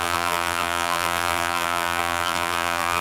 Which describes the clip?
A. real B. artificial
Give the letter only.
B